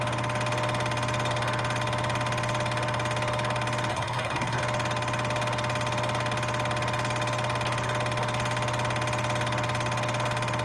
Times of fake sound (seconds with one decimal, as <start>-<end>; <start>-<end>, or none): 3.9-4.6